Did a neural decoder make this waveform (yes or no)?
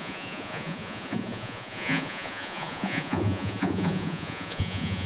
yes